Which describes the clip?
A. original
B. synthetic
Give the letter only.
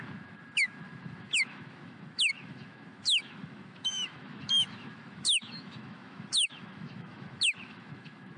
B